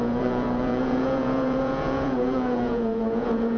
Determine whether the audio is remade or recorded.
remade